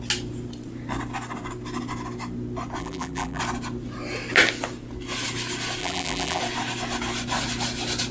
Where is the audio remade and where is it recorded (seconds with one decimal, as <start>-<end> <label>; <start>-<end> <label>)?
0.0-2.8 recorded; 2.8-3.4 remade; 3.4-5.8 recorded; 5.8-6.4 remade; 6.4-8.1 recorded